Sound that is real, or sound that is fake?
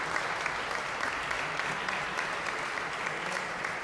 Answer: real